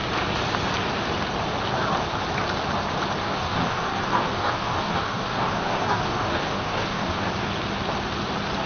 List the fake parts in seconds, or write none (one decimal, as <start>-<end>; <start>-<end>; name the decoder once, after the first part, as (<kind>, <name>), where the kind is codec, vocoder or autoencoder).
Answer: 3.2-7.3 (codec, DAC)